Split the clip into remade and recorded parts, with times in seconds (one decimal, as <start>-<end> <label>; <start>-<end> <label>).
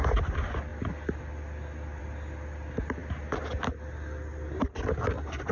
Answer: 0.0-5.5 recorded